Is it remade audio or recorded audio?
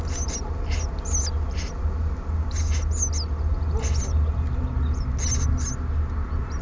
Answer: recorded